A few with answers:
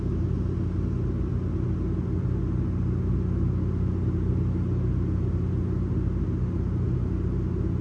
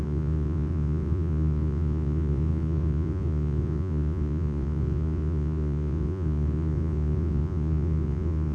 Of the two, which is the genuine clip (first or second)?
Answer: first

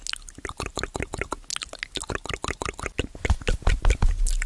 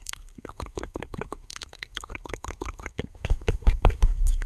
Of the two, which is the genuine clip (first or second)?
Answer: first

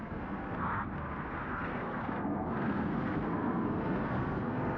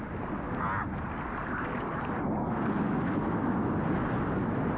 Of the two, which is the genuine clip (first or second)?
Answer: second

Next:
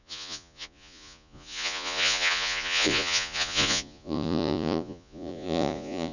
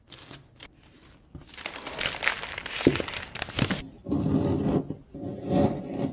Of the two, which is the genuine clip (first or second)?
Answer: second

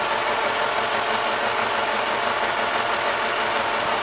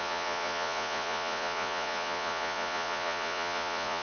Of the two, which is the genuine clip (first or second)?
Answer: first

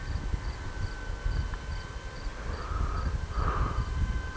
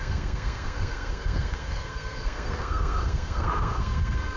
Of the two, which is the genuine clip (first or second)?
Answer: first